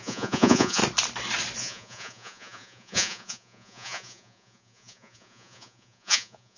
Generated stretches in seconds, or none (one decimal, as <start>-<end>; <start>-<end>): 0.0-0.8; 1.6-6.6